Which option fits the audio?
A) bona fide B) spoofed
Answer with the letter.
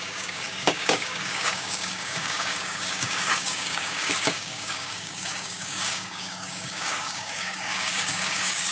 B